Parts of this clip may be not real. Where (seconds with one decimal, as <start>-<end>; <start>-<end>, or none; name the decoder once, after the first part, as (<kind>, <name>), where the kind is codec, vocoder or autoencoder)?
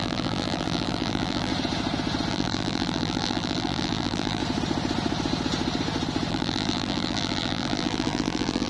0.0-1.5 (vocoder, BigVGAN v2); 2.3-4.4; 6.3-8.7